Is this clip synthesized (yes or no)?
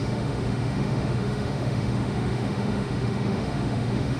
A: yes